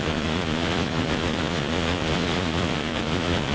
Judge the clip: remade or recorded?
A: remade